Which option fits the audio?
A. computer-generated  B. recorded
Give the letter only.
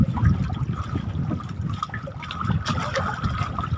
B